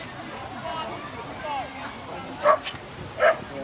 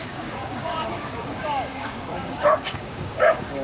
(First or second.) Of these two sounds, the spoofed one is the second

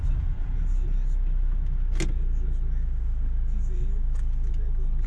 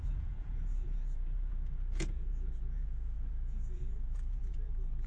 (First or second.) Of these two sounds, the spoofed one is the second